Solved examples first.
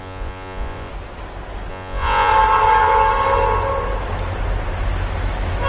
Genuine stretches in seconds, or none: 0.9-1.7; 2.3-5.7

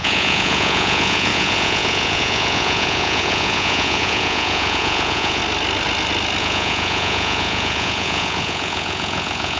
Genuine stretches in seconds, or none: 5.4-6.4

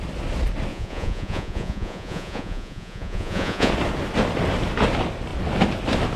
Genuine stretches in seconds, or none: 0.0-0.7; 3.7-6.2

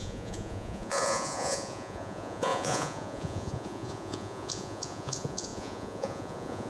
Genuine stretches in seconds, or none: none

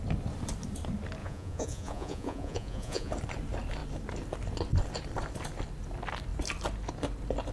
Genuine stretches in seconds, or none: 0.0-1.2; 3.1-7.5

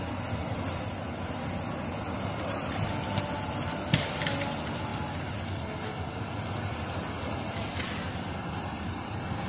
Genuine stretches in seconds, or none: 0.0-9.5